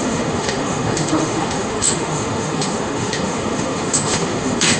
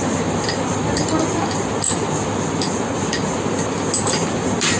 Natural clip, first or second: second